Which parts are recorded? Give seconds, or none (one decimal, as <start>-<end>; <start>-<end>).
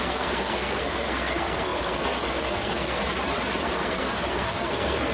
3.0-3.6